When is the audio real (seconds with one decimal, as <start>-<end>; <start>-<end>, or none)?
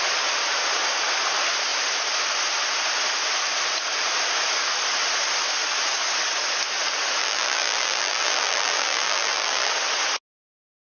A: 0.0-7.2; 9.7-10.9